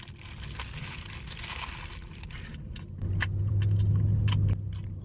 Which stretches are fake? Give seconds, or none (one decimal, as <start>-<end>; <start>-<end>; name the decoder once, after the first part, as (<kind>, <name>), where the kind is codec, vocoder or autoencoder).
none